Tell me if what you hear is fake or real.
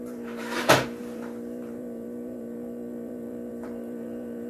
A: fake